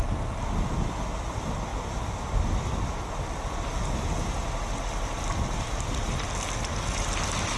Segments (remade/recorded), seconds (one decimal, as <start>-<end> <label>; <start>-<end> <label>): 0.0-7.6 recorded